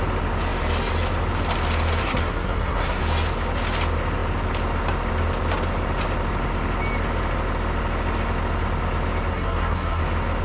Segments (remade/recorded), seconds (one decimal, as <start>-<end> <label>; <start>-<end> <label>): 0.0-2.0 recorded; 2.0-3.0 remade; 3.0-9.3 recorded; 9.3-10.0 remade; 10.0-10.4 recorded